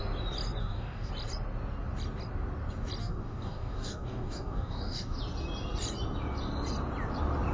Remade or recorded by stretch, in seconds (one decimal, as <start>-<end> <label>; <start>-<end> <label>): 0.0-0.6 recorded; 0.6-1.1 remade; 1.1-3.0 recorded; 3.0-5.2 remade; 5.2-7.5 recorded